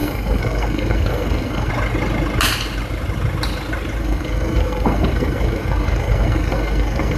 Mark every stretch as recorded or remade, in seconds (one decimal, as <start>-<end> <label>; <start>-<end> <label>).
0.0-1.7 remade; 1.7-4.0 recorded; 4.0-7.2 remade